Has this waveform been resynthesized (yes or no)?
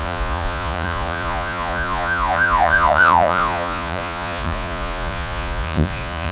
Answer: yes